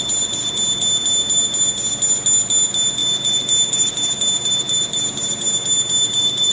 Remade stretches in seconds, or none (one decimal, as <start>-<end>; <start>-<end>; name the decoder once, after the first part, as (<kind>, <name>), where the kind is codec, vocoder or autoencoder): none